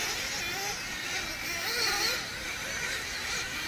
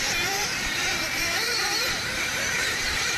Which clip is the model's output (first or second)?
second